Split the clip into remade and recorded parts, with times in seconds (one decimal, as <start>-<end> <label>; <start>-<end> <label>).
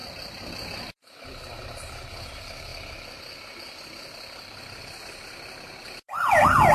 0.0-6.7 recorded